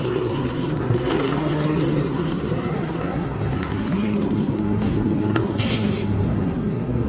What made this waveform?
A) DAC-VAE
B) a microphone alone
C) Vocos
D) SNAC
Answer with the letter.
D